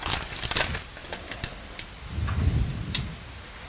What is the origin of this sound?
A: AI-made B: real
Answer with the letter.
B